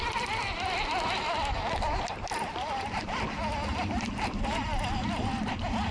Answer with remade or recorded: recorded